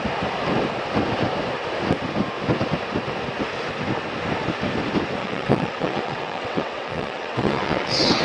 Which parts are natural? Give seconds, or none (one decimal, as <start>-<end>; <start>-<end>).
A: 0.0-5.2